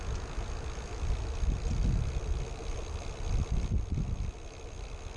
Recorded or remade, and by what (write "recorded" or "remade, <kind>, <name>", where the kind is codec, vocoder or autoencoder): recorded